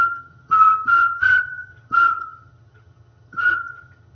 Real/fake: fake